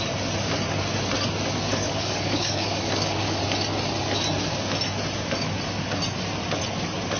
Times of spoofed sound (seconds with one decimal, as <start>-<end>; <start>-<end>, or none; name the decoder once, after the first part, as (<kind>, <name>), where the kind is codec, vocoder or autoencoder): 1.7-3.4 (codec, DAC)